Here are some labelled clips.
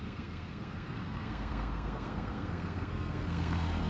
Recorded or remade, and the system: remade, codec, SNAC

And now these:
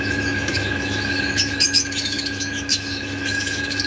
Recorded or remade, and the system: remade, autoencoder, DAC-VAE